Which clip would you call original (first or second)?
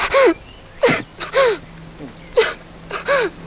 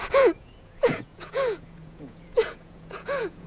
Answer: first